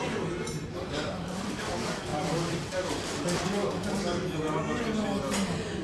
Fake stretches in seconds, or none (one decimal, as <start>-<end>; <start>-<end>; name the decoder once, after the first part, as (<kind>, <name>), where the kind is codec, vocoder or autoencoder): 0.8-1.6 (vocoder, BigVGAN v2); 2.1-3.1

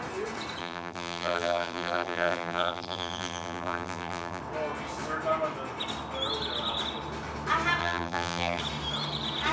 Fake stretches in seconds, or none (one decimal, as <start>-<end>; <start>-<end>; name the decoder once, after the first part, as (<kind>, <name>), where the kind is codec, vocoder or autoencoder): 0.6-4.4 (vocoder, BigVGAN v2); 7.8-8.6

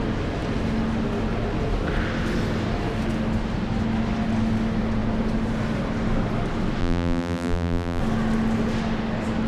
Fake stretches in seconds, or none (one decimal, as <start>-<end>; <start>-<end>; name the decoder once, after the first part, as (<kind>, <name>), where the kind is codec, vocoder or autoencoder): 6.8-8.0 (vocoder, BigVGAN v2)